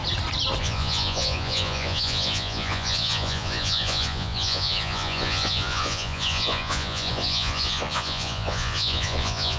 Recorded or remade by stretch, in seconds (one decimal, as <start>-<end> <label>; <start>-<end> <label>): 0.0-0.6 recorded; 0.6-9.6 remade